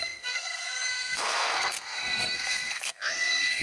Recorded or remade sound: remade